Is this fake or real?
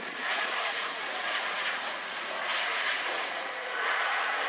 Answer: fake